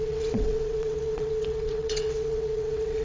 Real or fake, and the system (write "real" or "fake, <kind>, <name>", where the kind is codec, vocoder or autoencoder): fake, vocoder, WaveNeXt